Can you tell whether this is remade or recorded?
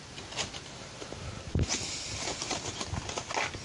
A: recorded